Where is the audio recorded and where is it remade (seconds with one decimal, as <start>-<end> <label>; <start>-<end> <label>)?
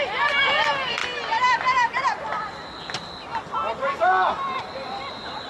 0.0-3.3 remade; 3.3-4.0 recorded; 4.0-5.5 remade